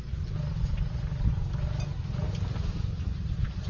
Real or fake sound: real